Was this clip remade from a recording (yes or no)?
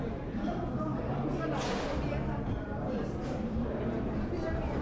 yes